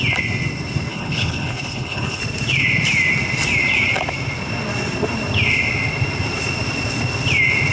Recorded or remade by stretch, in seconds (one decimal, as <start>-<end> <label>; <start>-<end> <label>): 0.0-0.9 recorded; 0.9-2.2 remade; 2.2-7.7 recorded